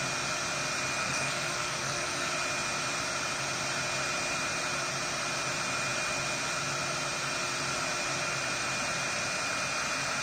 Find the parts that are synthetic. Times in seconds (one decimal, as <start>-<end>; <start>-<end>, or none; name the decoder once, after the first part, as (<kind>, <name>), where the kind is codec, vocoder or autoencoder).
1.0-2.3 (codec, SNAC)